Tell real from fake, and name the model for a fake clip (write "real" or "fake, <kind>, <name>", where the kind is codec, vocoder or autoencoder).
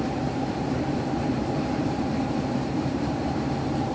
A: fake, vocoder, BigVGAN v2